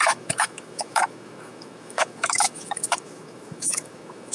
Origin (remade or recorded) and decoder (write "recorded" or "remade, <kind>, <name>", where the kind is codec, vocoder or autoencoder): remade, autoencoder, DAC-VAE